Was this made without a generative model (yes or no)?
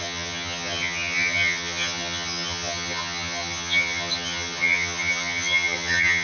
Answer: no